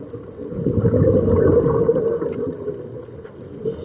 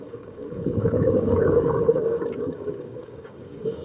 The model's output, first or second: second